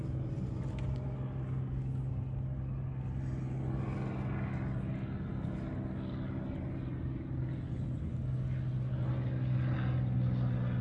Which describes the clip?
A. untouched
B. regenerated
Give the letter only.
A